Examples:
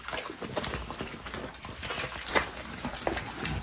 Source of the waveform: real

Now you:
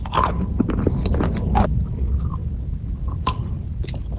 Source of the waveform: real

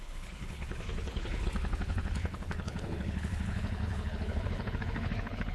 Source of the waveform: fake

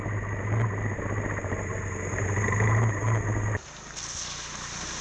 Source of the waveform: real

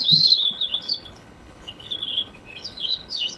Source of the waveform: fake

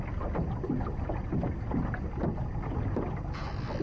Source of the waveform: real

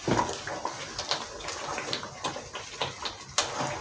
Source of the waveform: real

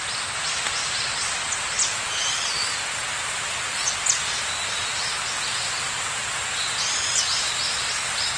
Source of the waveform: real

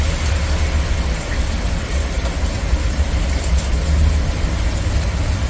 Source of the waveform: real